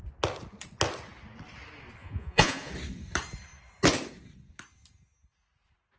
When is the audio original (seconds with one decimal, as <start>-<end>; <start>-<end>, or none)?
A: 0.0-2.0; 2.7-6.0